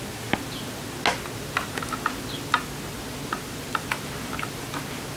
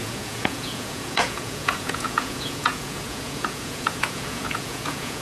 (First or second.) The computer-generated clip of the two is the second